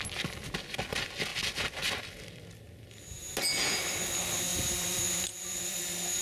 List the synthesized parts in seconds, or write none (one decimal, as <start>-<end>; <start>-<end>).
4.5-5.8